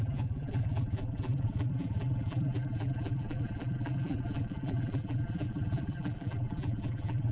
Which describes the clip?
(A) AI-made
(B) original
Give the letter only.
A